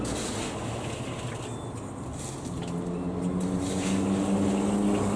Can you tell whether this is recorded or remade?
recorded